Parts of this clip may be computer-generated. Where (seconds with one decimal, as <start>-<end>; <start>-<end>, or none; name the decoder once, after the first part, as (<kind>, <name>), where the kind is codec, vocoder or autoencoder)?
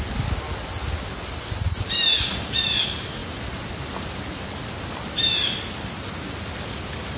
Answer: none